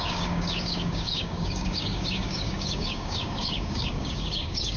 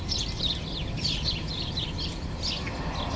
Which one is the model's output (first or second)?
first